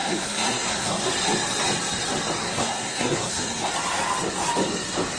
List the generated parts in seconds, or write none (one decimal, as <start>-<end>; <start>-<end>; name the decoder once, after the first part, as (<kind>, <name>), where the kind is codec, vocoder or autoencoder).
0.0-1.0 (codec, SNAC); 2.4-3.7